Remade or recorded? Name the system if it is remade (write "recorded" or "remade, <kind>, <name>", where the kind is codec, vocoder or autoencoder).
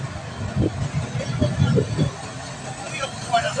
recorded